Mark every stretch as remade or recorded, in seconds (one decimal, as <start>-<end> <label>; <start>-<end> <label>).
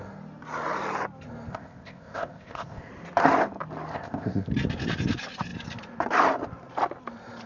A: 0.0-1.5 recorded; 1.5-2.9 remade; 2.9-3.9 recorded; 3.9-4.5 remade; 4.5-7.5 recorded